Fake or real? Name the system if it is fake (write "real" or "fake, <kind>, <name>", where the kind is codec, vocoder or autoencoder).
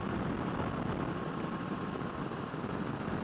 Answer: real